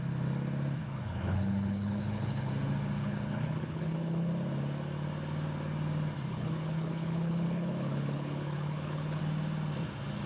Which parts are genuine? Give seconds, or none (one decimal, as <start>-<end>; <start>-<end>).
0.0-0.8; 2.5-3.0; 4.3-6.3; 9.2-10.3